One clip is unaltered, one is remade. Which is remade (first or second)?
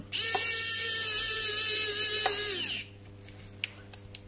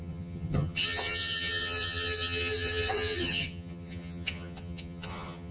second